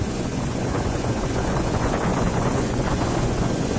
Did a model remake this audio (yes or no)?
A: yes